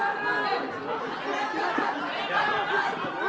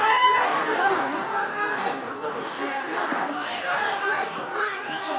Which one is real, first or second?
first